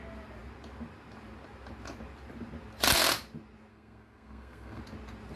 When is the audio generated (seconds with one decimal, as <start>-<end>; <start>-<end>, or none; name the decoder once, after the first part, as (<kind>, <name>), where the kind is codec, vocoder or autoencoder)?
3.7-4.8 (codec, SNAC)